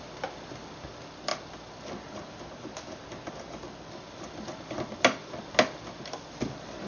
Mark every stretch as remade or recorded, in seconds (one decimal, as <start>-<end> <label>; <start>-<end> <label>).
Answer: 0.0-6.9 recorded